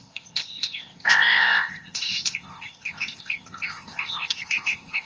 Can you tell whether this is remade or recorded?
remade